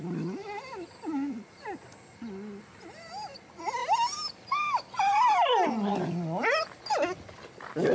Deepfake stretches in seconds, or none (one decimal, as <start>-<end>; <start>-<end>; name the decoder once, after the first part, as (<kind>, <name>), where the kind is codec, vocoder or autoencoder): none

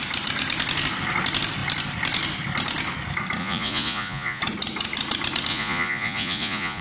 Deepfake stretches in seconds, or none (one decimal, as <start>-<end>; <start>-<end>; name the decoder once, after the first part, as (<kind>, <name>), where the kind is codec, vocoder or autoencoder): 3.4-4.4 (vocoder, Vocos); 5.5-6.8

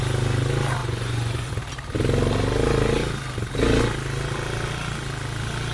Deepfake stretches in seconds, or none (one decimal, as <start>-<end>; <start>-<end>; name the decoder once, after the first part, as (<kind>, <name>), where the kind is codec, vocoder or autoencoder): 0.8-1.5 (vocoder, Vocos)

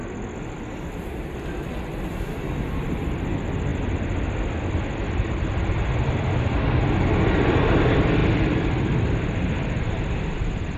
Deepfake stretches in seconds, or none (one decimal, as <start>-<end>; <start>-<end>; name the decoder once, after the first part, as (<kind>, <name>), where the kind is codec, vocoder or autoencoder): none

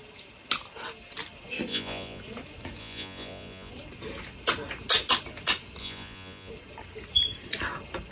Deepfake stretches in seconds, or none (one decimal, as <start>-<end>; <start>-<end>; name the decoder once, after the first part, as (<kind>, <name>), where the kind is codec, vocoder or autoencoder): 1.7-2.2 (vocoder, Vocos); 2.8-3.7; 5.8-6.5

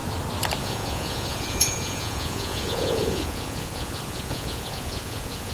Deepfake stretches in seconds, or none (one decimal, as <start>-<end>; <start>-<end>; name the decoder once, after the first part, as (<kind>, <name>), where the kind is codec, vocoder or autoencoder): 0.6-5.5 (vocoder, Vocos)

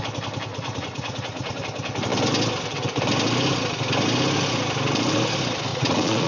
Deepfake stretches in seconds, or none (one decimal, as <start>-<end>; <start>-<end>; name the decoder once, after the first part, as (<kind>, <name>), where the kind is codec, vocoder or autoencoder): 0.5-1.6 (vocoder, Vocos); 5.7-6.3